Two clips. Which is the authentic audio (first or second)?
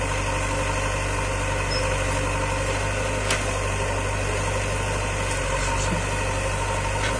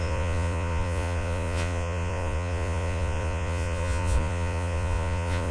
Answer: first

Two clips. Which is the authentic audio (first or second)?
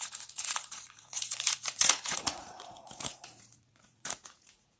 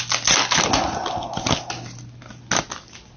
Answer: second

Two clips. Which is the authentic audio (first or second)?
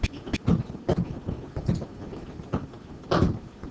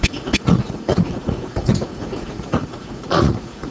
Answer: first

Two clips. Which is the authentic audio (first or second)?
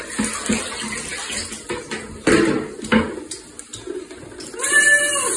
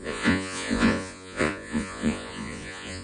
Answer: first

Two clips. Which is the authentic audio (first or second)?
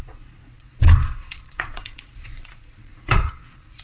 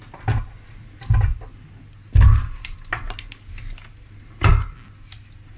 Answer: second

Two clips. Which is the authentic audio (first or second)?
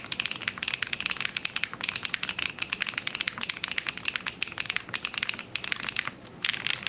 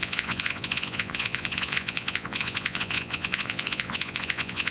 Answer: first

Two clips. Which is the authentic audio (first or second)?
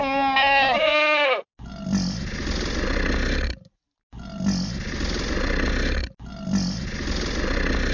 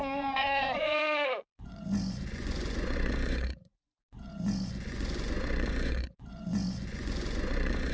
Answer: first